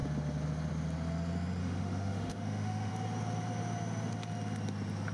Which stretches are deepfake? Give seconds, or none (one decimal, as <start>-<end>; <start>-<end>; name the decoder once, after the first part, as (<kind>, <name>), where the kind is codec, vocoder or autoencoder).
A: 1.6-2.9 (autoencoder, DAC-VAE)